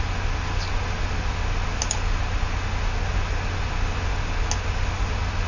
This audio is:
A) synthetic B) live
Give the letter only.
B